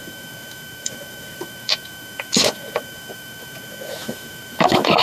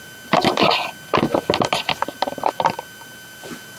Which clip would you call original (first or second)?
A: second